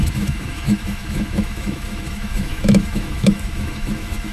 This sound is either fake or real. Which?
fake